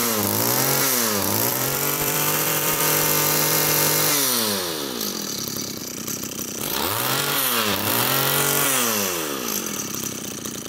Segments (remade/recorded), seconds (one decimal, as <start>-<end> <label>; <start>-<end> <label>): 0.0-1.5 recorded; 1.5-2.8 remade; 2.8-5.8 recorded; 5.8-7.9 remade; 7.9-10.7 recorded